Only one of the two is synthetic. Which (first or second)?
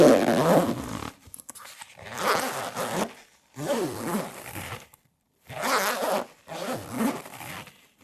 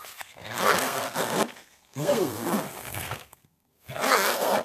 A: second